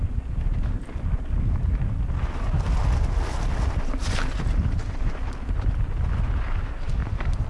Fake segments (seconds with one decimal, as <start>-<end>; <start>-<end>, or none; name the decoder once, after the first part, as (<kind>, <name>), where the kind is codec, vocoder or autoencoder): 7.0-7.5 (vocoder, BigVGAN v2)